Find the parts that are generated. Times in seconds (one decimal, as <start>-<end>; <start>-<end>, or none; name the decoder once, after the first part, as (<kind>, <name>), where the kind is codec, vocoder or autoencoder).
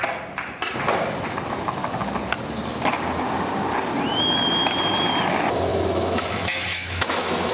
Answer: 5.7-7.5 (autoencoder, DAC-VAE)